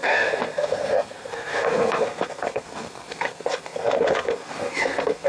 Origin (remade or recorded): remade